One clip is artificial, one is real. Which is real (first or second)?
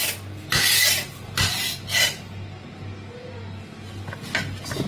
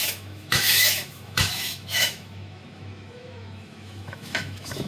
first